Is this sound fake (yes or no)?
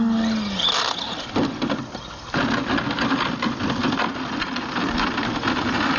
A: no